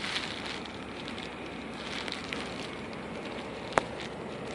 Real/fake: real